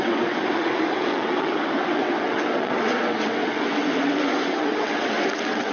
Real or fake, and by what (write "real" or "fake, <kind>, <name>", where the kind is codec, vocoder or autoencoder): fake, vocoder, WaveNeXt